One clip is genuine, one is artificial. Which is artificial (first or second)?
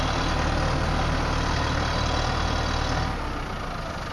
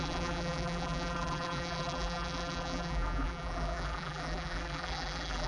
second